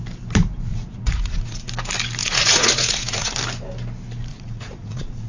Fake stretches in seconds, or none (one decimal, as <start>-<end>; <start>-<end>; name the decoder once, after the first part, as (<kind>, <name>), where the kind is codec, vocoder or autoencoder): 0.7-1.7 (vocoder, Vocos); 2.2-3.3; 4.3-5.3